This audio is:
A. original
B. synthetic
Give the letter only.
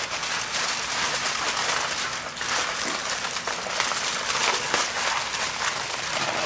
A